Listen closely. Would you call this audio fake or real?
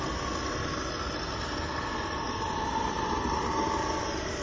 real